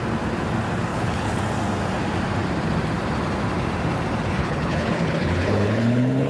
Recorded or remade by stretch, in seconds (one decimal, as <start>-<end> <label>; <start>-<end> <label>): 0.0-0.9 recorded; 0.9-1.4 remade; 1.4-4.4 recorded; 4.4-6.3 remade